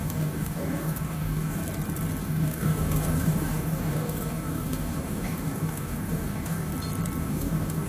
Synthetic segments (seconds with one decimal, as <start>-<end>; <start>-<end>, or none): 0.0-1.6; 2.2-6.7; 7.2-7.9